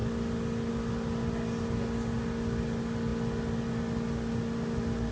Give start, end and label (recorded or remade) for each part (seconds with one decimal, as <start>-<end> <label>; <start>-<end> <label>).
0.0-5.1 recorded